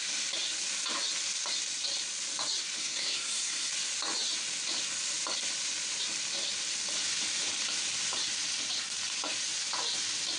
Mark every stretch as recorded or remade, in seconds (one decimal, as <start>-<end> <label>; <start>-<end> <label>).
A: 0.0-2.8 recorded; 2.8-3.7 remade; 3.7-10.4 recorded